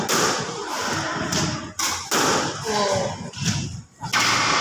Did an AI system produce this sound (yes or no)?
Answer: no